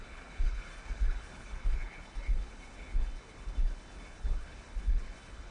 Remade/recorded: remade